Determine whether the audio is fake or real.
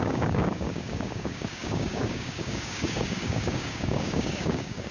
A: fake